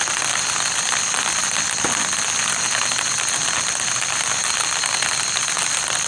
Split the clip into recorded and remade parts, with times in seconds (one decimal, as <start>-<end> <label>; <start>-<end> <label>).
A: 0.0-6.1 recorded